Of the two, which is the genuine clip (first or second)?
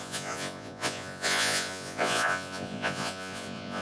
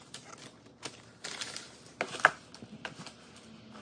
second